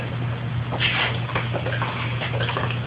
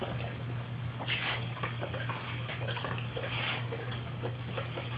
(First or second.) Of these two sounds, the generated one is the second